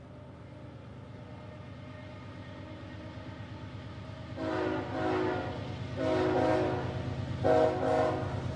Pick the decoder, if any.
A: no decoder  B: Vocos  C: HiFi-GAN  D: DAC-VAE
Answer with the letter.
A